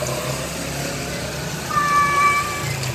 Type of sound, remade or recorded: recorded